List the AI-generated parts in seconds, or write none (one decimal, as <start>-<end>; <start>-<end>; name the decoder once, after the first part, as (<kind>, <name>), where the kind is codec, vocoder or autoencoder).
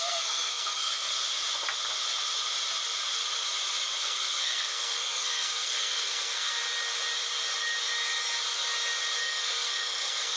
0.0-1.1 (codec, SNAC); 4.0-6.6; 9.2-10.4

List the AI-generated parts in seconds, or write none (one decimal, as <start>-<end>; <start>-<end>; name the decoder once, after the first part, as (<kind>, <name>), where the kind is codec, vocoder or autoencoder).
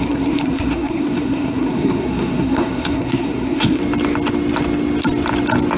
0.0-3.8 (codec, SNAC)